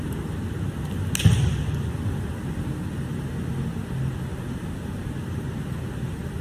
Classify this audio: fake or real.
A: real